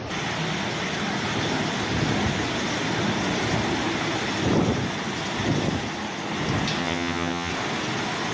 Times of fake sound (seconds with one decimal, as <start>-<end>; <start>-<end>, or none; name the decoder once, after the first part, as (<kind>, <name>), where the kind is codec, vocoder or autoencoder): 6.8-7.5 (vocoder, HiFi-GAN)